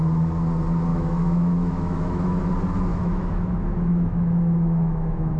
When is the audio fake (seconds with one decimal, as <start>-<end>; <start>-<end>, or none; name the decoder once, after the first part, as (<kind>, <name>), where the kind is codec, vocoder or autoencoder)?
0.9-2.4 (autoencoder, DAC-VAE); 2.9-5.4